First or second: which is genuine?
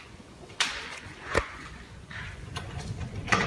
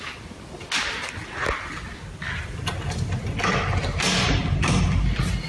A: second